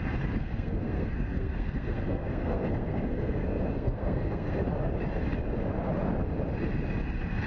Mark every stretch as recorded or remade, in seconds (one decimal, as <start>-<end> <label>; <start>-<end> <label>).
0.0-0.4 recorded; 0.4-4.6 remade; 4.6-7.5 recorded